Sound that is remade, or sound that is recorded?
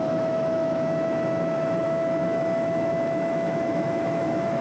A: remade